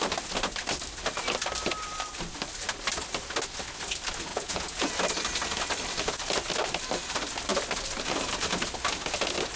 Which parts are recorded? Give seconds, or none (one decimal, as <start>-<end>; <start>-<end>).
0.0-4.3; 4.9-9.6